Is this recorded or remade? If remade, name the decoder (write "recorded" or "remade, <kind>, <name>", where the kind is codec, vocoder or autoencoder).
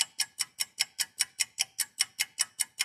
recorded